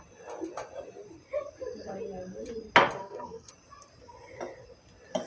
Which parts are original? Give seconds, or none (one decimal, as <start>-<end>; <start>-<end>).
0.0-3.0; 3.5-5.3